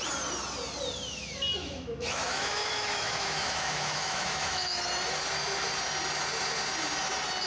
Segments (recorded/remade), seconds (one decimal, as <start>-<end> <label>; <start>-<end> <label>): 0.0-1.6 recorded; 1.6-4.8 remade; 4.8-7.5 recorded